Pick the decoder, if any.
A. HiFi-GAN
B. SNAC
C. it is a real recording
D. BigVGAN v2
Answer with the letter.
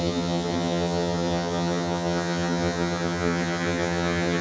A